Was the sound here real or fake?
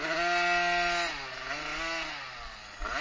real